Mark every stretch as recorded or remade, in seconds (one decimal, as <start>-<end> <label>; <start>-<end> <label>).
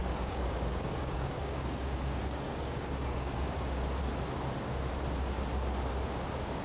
0.0-4.0 remade; 4.0-6.6 recorded